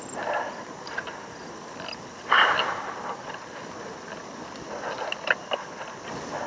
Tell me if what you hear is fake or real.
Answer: real